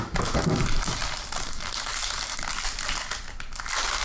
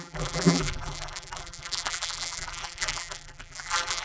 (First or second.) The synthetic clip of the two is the second